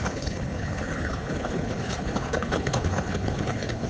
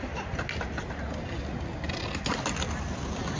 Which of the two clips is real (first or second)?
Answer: second